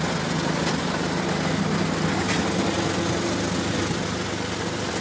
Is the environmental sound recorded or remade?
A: recorded